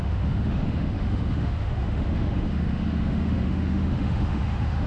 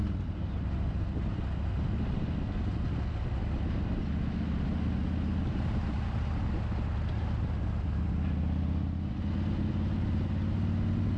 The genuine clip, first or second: second